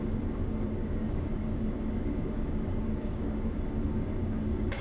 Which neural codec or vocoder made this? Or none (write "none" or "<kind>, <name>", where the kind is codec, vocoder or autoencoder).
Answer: codec, DAC